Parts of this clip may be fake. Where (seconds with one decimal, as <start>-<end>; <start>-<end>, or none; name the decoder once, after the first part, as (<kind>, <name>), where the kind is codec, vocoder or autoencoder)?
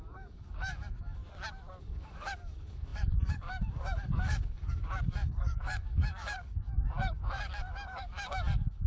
0.0-1.2 (codec, DAC); 1.8-8.9